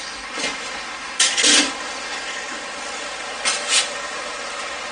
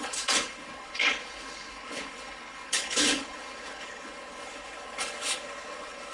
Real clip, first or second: first